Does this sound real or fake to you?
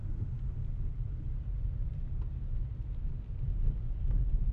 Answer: real